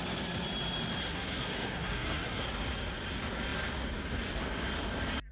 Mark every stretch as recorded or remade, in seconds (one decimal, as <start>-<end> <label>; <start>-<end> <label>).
0.0-1.0 recorded; 1.0-2.4 remade; 2.4-5.3 recorded